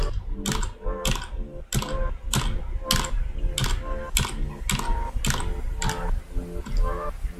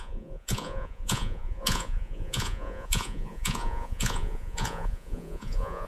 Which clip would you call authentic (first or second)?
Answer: first